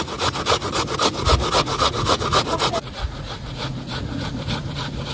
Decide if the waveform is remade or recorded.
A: remade